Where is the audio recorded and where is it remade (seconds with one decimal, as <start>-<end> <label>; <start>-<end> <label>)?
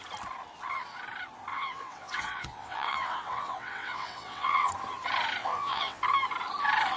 0.0-1.5 recorded; 1.5-4.7 remade; 4.7-5.4 recorded; 5.4-6.0 remade; 6.0-7.0 recorded